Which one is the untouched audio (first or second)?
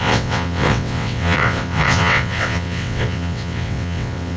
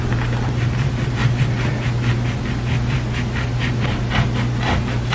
second